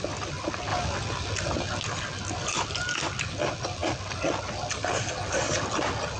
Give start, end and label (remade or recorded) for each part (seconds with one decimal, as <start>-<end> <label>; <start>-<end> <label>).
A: 0.0-6.2 recorded